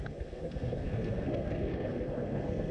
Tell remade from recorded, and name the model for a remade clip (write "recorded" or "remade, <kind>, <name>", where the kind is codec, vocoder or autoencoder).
remade, codec, SNAC